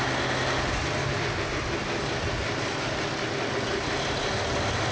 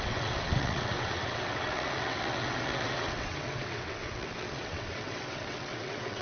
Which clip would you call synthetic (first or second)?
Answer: second